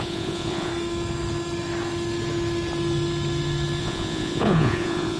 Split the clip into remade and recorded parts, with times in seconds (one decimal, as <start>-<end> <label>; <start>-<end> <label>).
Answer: 0.0-0.7 remade; 0.7-3.8 recorded; 3.8-5.2 remade